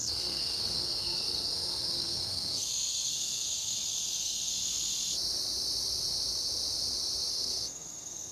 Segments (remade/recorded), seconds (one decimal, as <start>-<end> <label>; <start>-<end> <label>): 0.0-4.5 remade; 4.5-7.3 recorded; 7.3-8.3 remade